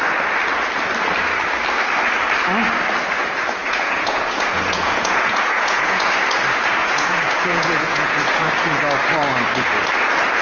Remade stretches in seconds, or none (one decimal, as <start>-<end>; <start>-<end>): 3.6-6.1; 6.8-8.5